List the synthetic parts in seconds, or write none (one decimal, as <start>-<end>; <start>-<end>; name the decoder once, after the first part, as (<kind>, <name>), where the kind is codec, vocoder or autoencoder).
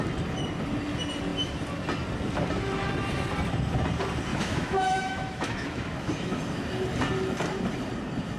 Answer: 4.3-6.4 (autoencoder, DAC-VAE)